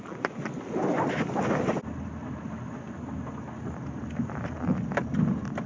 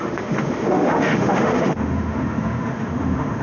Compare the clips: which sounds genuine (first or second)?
first